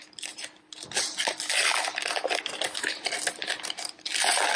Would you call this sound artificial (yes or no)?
no